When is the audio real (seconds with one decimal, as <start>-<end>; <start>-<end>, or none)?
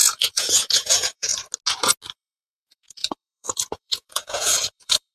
1.3-2.1